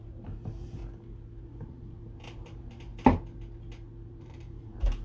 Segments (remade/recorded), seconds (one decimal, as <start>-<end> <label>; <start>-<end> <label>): 0.0-0.8 remade; 0.8-1.4 recorded; 1.4-2.9 remade; 2.9-4.1 recorded; 4.1-5.0 remade